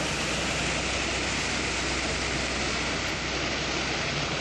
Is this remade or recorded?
recorded